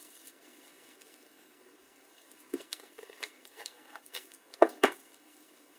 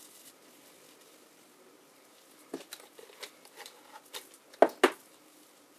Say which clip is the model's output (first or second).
first